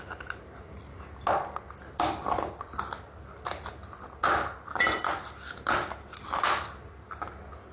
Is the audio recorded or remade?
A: recorded